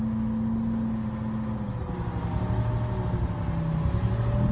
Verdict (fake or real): real